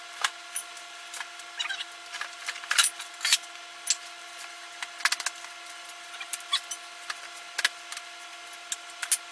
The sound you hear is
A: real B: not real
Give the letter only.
A